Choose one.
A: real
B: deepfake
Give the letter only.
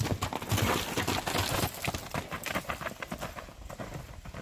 A